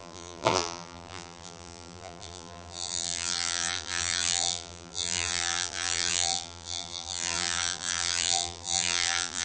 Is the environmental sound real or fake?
fake